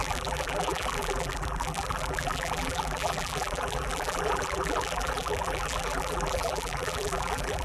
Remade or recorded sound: remade